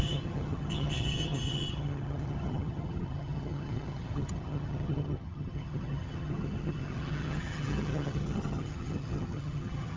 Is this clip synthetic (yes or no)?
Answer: yes